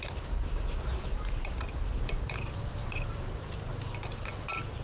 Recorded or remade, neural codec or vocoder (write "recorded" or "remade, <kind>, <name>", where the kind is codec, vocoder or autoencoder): recorded